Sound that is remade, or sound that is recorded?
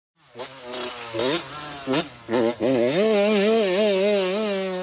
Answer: recorded